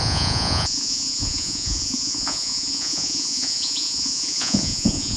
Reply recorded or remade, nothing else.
remade